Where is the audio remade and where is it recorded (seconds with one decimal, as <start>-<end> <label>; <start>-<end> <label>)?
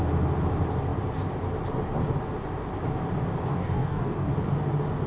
0.0-3.5 recorded; 3.5-4.3 remade; 4.3-5.1 recorded